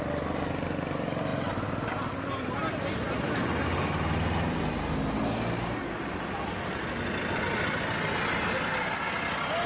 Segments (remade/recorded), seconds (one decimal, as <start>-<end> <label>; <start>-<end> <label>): 0.0-9.7 recorded